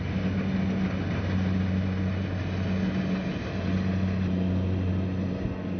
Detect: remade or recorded recorded